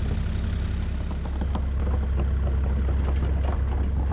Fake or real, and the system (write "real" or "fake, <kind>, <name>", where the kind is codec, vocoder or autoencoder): real